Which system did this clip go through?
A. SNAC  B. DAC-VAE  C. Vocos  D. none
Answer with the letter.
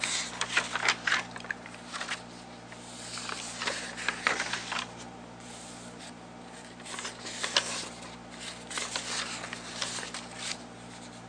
D